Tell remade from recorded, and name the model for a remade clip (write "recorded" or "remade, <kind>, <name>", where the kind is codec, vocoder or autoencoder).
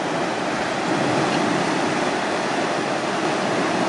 recorded